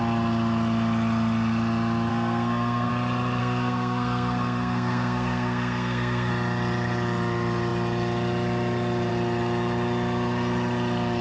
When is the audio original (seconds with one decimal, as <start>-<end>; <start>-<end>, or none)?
0.0-2.1; 2.9-3.4; 6.3-11.2

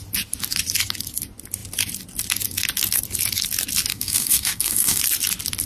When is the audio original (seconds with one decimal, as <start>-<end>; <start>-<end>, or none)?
0.0-3.9; 5.0-5.7

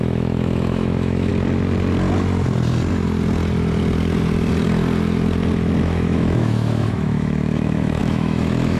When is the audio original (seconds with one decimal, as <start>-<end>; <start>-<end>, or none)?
1.3-5.8

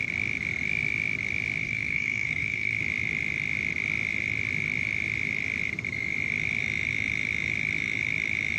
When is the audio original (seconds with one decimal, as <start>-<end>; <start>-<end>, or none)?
0.0-1.6; 2.8-8.6

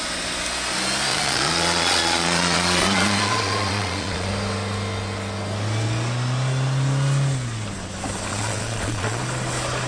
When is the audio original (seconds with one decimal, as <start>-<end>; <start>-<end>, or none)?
0.0-1.1; 4.3-8.3; 9.2-9.9